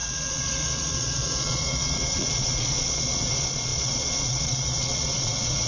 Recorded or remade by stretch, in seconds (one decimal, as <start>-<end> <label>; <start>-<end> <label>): 0.0-5.7 remade